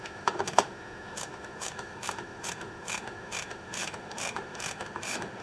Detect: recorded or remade remade